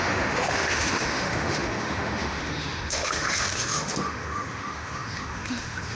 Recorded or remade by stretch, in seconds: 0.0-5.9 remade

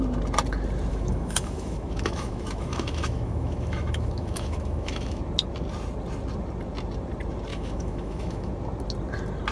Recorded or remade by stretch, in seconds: 0.0-0.9 recorded; 0.9-5.2 remade; 5.2-7.5 recorded; 7.5-8.5 remade; 8.5-9.5 recorded

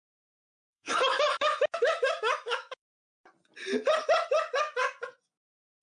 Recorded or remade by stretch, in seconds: 0.0-0.4 recorded; 0.4-3.0 remade; 3.0-5.8 recorded

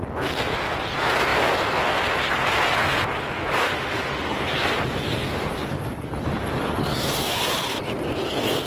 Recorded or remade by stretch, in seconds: 0.0-3.6 recorded; 3.6-4.3 remade; 4.3-8.7 recorded

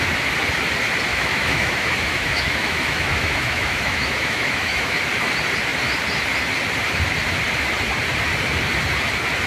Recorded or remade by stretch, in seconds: 0.0-1.1 recorded; 1.1-5.0 remade; 5.0-9.5 recorded

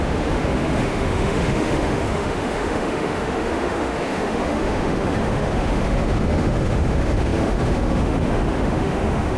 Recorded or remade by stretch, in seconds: 0.0-9.4 remade

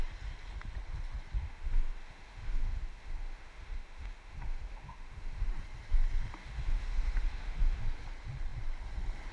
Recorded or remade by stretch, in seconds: 0.0-1.4 recorded; 1.4-5.5 remade; 5.5-6.4 recorded; 6.4-7.8 remade; 7.8-9.3 recorded